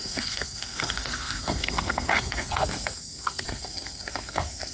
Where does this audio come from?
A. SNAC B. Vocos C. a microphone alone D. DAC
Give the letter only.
A